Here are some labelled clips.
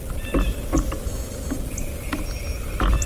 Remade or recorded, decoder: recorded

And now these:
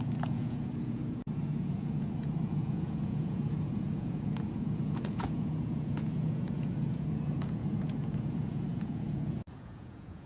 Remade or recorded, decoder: remade, vocoder, Vocos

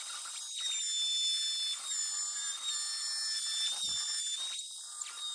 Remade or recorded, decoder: recorded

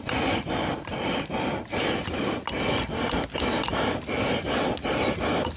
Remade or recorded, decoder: recorded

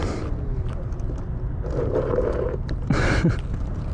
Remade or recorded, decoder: recorded